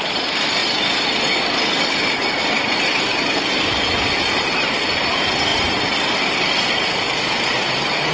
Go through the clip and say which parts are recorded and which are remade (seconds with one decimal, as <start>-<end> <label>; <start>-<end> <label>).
0.0-0.6 remade; 0.6-2.1 recorded; 2.1-3.1 remade; 3.1-4.7 recorded; 4.7-8.1 remade